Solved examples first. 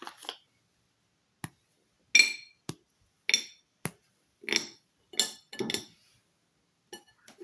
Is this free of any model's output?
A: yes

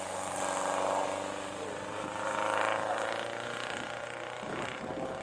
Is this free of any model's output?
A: yes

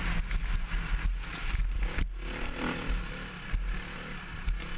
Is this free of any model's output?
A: yes